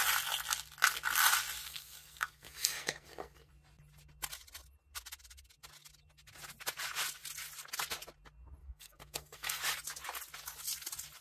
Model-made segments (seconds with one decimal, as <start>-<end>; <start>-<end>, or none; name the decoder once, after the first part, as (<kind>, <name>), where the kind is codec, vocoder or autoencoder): 1.6-3.5 (codec, SNAC); 8.6-9.6